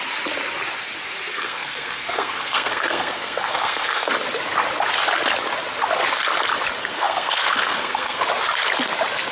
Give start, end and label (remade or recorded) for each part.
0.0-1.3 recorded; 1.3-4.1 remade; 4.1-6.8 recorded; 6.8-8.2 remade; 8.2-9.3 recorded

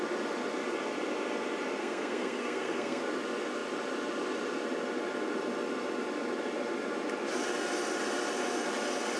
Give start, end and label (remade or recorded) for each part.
0.0-1.8 recorded; 1.8-3.0 remade; 3.0-9.2 recorded

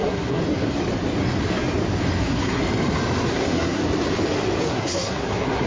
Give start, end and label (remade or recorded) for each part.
0.0-0.4 remade; 0.4-2.2 recorded; 2.2-2.6 remade; 2.6-3.3 recorded; 3.3-3.8 remade; 3.8-4.7 recorded; 4.7-5.7 remade

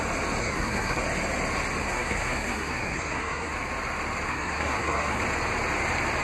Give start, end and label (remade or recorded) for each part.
0.0-0.4 recorded; 0.4-1.0 remade; 1.0-1.8 recorded; 1.8-3.5 remade; 3.5-4.3 recorded; 4.3-5.2 remade; 5.2-6.2 recorded

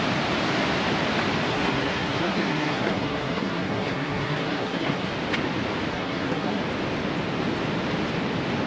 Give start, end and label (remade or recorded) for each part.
0.0-1.5 recorded; 1.5-5.1 remade; 5.1-5.9 recorded; 5.9-6.6 remade; 6.6-8.7 recorded

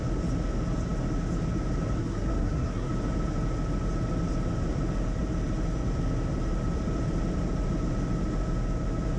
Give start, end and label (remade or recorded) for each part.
0.0-2.0 recorded; 2.0-2.9 remade; 2.9-9.2 recorded

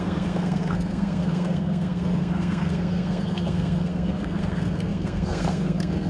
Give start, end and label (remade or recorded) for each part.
0.0-6.1 remade

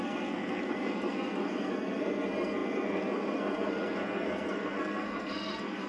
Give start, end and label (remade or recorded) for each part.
0.0-5.9 remade